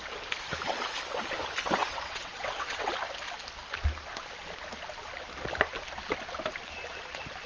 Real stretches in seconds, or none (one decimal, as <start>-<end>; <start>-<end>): 0.0-1.8; 2.9-7.5